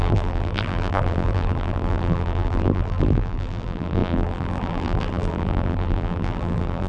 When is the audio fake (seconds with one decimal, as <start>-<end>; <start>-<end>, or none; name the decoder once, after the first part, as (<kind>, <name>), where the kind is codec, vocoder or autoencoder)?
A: 0.0-6.9 (vocoder, BigVGAN v2)